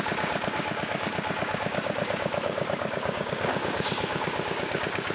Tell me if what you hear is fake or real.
fake